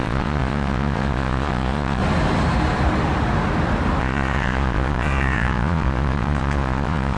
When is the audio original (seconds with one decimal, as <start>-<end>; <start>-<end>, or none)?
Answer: 2.0-4.0